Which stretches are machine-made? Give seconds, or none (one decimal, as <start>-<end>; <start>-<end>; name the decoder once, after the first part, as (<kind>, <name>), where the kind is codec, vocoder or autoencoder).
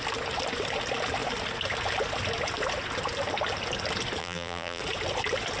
4.2-4.8 (vocoder, BigVGAN v2)